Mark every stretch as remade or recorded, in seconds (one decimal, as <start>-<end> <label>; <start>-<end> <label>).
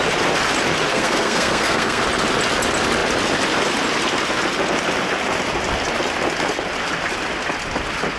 0.0-0.9 recorded; 0.9-2.0 remade; 2.0-8.2 recorded